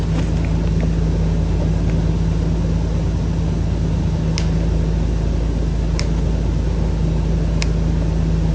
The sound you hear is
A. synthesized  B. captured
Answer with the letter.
B